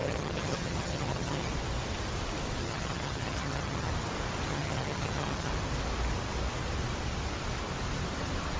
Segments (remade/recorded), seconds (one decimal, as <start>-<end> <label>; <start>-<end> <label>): 0.0-1.5 remade; 1.5-2.6 recorded; 2.6-3.9 remade; 3.9-4.5 recorded; 4.5-5.5 remade; 5.5-8.6 recorded